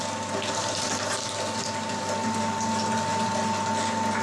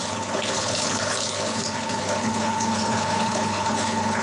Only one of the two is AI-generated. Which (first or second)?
second